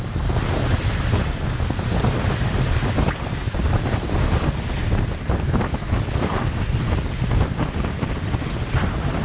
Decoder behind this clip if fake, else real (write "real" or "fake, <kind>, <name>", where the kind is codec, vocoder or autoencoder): real